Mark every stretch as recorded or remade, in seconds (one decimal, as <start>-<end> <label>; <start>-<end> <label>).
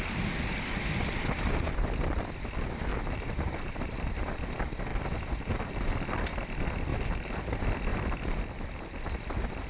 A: 0.0-2.9 recorded; 2.9-4.3 remade; 4.3-4.9 recorded; 4.9-5.7 remade; 5.7-6.9 recorded; 6.9-7.4 remade; 7.4-9.7 recorded